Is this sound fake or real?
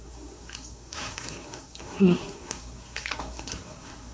fake